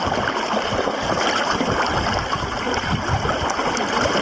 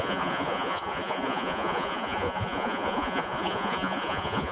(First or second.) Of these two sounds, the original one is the first